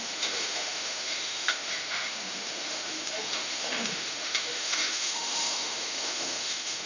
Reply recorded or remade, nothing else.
remade